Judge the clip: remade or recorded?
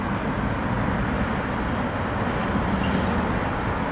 recorded